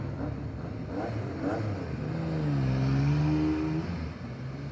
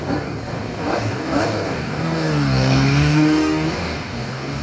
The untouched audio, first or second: first